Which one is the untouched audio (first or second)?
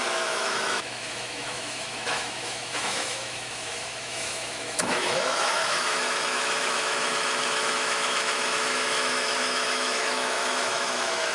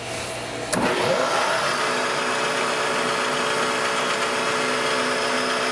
second